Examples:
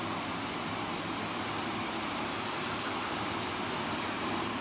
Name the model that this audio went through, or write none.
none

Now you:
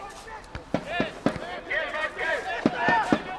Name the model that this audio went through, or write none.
none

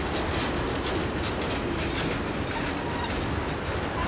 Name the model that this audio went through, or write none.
none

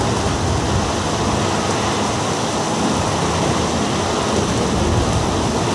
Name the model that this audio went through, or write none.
none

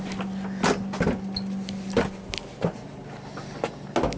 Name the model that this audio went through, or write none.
none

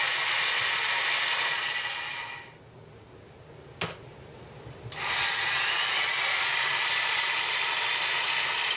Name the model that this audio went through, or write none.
none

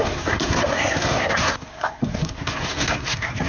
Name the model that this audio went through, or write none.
codec, SNAC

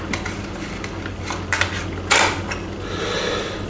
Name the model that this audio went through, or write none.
none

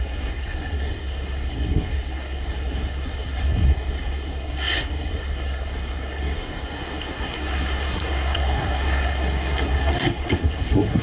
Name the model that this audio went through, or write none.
codec, SNAC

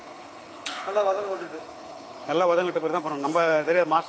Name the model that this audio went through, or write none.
codec, HILCodec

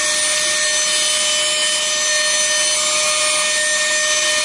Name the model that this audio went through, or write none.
none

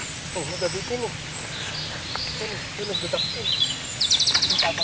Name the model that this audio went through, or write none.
none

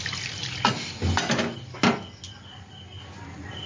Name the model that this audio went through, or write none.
none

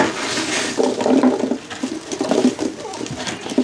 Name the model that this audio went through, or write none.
none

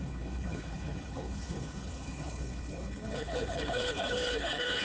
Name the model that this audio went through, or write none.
codec, HILCodec